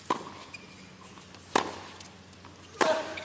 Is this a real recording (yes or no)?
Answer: yes